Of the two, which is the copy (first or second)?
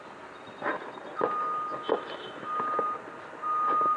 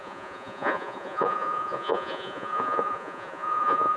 second